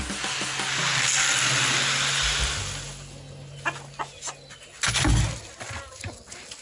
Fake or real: real